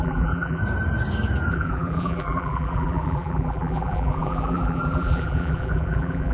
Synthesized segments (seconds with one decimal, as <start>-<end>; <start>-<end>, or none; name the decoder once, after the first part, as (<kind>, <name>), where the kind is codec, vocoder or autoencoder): 0.0-0.6 (vocoder, BigVGAN v2); 1.5-6.3